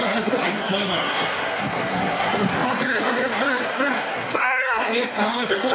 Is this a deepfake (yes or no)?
yes